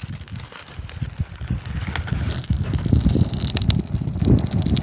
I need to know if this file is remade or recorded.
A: recorded